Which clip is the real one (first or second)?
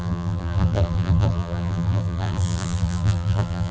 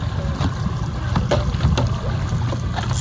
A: second